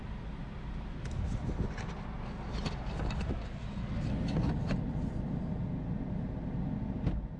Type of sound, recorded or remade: recorded